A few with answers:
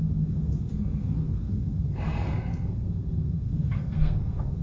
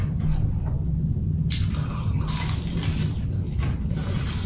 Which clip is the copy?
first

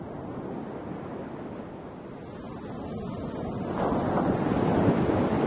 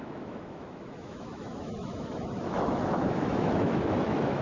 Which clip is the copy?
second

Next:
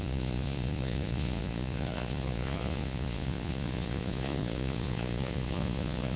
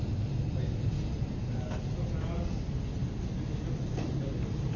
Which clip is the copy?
first